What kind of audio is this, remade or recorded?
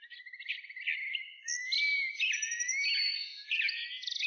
recorded